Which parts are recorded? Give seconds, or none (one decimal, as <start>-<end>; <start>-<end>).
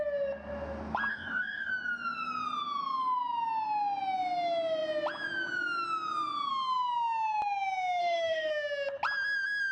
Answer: 0.0-1.1; 1.7-8.0; 8.5-9.7